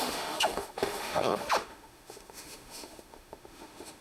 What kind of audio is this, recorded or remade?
remade